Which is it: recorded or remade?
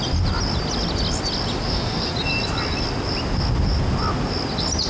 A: recorded